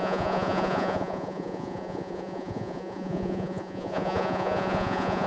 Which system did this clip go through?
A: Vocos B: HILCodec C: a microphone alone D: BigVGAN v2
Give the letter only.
A